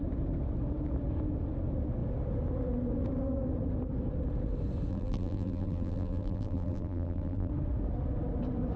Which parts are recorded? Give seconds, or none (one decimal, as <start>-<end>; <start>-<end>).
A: 0.0-4.9; 7.5-8.8